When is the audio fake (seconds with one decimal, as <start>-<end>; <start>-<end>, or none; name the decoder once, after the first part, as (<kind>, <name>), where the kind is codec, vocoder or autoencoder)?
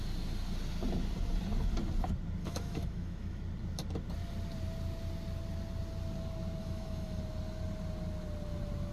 2.4-3.4 (autoencoder, DAC-VAE); 6.6-7.2